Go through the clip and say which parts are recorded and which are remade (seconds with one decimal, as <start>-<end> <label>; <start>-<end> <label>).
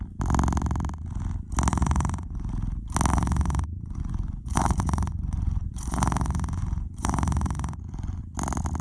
0.0-1.7 recorded; 1.7-2.5 remade; 2.5-3.1 recorded; 3.1-8.2 remade; 8.2-8.8 recorded